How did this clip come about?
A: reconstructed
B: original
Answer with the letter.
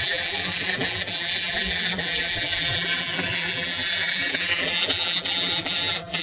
A